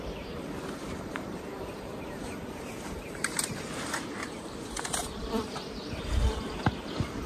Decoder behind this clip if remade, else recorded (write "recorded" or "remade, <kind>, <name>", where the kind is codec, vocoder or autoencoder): remade, vocoder, BigVGAN v2